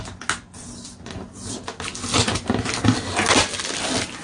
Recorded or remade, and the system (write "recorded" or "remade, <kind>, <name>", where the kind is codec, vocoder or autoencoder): recorded